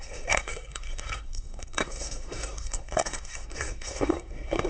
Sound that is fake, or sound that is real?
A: fake